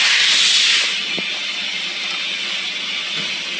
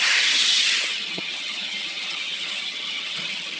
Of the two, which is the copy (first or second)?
second